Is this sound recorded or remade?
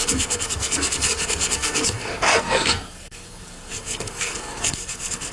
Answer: remade